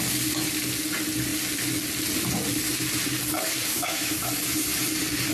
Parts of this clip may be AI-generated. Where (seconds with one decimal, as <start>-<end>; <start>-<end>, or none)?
3.7-4.3